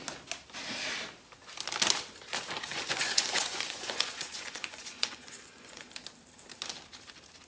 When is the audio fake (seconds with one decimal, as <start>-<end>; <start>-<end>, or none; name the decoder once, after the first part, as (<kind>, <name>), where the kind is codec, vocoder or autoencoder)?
2.7-5.9 (vocoder, Vocos)